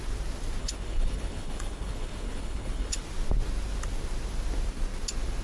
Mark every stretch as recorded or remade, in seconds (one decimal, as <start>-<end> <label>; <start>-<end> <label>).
0.0-0.6 recorded; 0.6-3.0 remade; 3.0-5.4 recorded